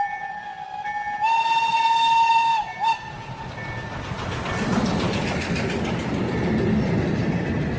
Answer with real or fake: real